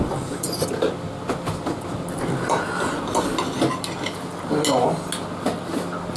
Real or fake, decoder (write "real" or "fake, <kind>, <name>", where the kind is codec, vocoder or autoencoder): real